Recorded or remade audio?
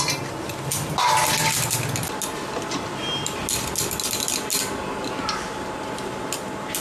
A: recorded